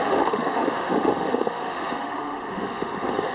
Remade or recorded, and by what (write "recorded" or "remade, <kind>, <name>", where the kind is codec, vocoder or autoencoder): remade, autoencoder, DAC-VAE